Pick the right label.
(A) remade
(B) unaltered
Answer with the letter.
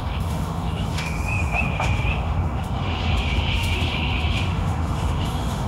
A